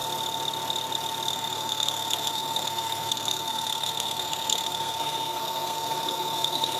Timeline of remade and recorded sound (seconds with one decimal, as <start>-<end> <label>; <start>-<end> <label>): 0.0-1.3 recorded; 1.3-6.8 remade